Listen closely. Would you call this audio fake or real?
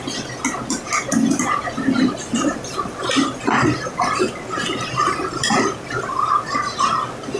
real